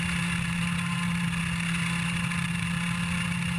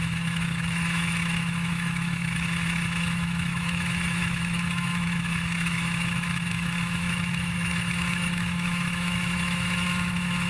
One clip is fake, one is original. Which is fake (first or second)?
second